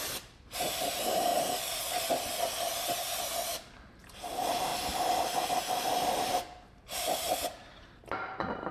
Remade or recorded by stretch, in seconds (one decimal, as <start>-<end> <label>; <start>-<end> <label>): 0.0-1.3 remade; 1.3-3.9 recorded; 3.9-4.7 remade; 4.7-5.5 recorded; 5.5-8.7 remade